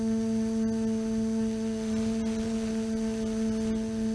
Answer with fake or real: real